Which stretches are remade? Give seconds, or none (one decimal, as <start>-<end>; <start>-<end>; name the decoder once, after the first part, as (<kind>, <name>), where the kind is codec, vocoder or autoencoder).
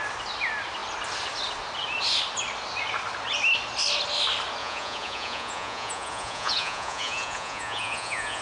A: 4.6-8.4 (vocoder, Vocos)